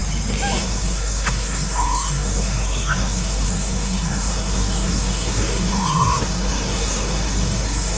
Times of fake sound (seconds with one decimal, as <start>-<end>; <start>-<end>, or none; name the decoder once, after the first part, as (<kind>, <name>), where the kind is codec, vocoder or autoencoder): 0.6-8.0 (codec, SNAC)